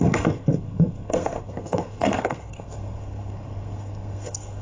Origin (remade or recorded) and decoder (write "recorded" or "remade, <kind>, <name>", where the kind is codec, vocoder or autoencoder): remade, codec, SNAC